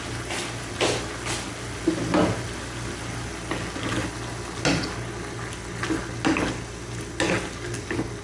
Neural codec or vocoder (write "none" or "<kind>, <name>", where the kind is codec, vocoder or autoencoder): none